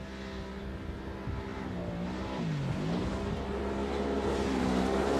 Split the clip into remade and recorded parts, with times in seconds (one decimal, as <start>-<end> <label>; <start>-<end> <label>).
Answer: 0.0-5.2 recorded